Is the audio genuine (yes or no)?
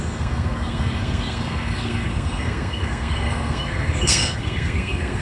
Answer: no